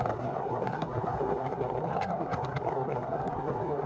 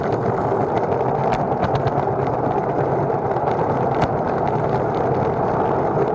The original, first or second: second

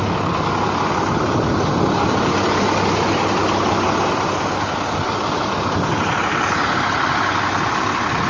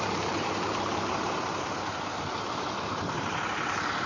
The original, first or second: first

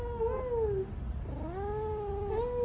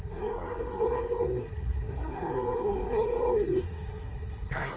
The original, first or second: first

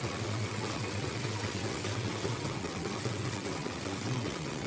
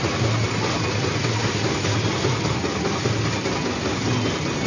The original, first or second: second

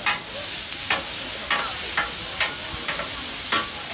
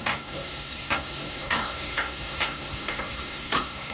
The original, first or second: first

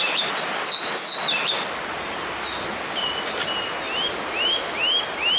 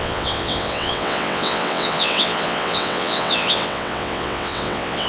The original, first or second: first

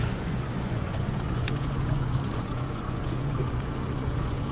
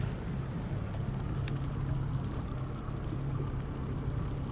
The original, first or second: second